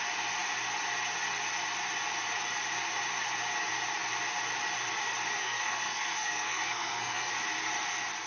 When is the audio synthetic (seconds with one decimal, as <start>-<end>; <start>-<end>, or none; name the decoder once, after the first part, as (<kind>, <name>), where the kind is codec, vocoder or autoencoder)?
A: 5.4-7.3 (codec, SNAC)

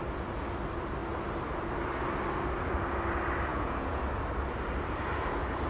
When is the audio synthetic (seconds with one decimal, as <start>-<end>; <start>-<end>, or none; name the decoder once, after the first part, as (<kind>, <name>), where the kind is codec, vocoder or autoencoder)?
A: 3.5-4.0 (vocoder, Vocos)

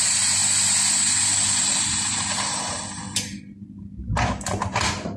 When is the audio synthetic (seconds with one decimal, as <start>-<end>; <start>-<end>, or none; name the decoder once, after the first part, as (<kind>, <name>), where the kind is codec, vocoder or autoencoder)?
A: 0.0-0.4 (vocoder, BigVGAN v2); 1.8-5.2

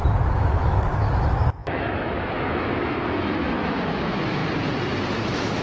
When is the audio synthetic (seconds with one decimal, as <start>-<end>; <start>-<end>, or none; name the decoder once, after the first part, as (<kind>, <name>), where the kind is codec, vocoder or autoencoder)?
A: 0.0-4.4 (autoencoder, DAC-VAE); 5.1-5.6